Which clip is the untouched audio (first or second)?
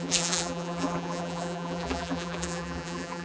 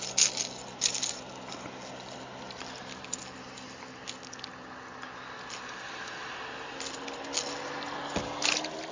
second